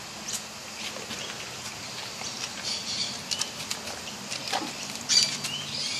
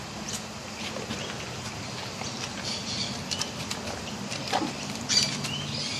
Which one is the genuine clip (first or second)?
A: first